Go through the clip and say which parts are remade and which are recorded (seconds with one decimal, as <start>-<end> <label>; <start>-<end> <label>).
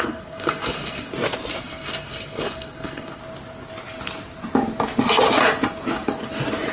0.0-1.1 remade; 1.1-1.6 recorded; 1.6-3.2 remade; 3.2-6.7 recorded